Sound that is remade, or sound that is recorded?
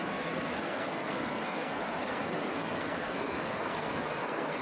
remade